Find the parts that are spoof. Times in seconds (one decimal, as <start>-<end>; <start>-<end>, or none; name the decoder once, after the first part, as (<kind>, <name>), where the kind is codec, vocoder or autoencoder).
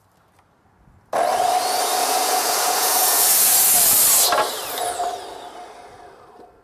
2.0-3.5 (vocoder, Vocos)